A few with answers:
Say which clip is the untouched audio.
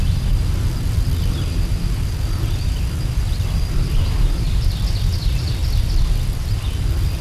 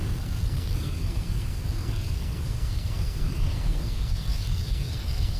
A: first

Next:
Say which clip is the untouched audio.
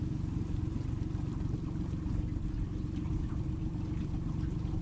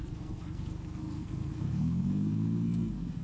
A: first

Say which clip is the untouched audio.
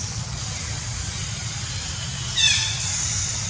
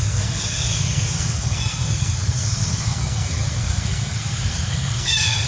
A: first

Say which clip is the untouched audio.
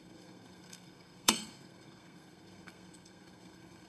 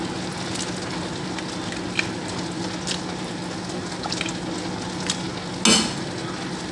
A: second